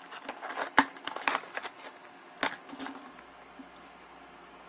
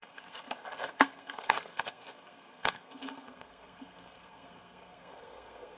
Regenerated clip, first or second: second